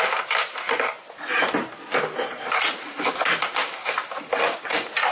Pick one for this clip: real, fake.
real